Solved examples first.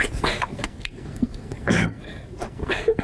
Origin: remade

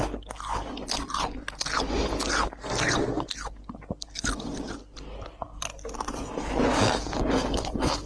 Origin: recorded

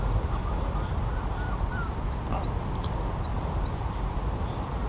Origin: recorded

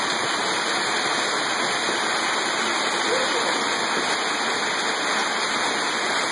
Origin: recorded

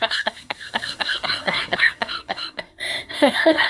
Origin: remade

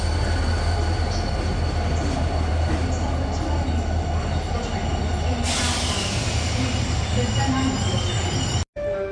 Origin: recorded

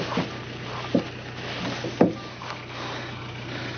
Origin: recorded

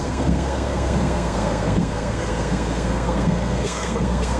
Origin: remade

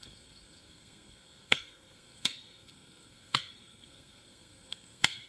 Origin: remade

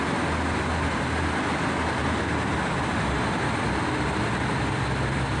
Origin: recorded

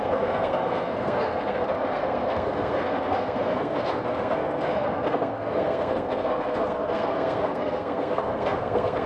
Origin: remade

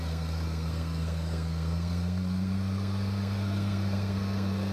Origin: remade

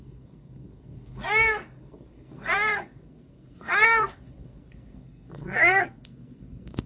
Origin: remade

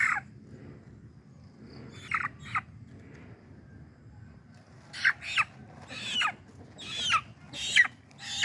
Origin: recorded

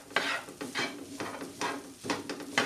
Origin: recorded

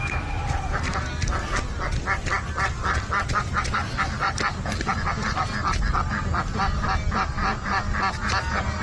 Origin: recorded